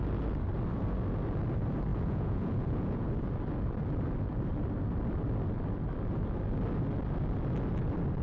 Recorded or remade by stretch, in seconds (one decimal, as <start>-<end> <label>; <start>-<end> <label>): 0.0-1.9 recorded; 1.9-3.1 remade; 3.1-8.2 recorded